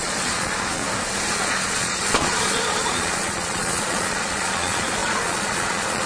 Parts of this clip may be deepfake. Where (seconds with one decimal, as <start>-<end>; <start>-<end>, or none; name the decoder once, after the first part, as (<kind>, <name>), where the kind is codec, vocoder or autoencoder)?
0.0-0.8 (vocoder, Vocos); 1.3-6.1